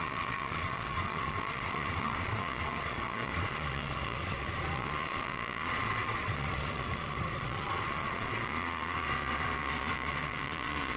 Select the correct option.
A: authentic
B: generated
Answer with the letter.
B